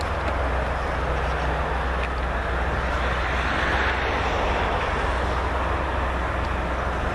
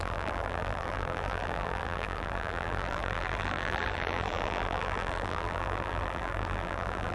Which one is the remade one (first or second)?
second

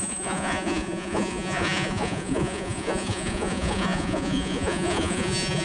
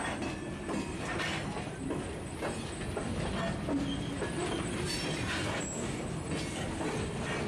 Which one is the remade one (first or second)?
first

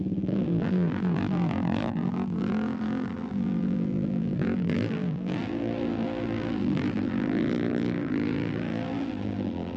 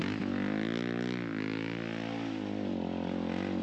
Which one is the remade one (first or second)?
first